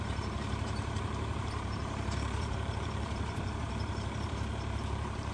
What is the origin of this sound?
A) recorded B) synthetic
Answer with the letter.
B